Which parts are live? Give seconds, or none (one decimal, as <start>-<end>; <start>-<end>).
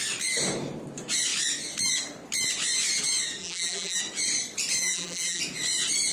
0.0-3.4; 4.0-4.8; 5.4-6.1